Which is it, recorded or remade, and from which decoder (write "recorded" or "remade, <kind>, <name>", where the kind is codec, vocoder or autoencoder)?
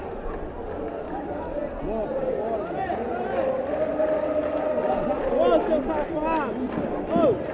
recorded